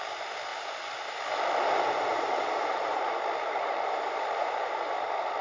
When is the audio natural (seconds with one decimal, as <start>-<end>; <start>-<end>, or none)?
0.0-0.5; 1.2-2.1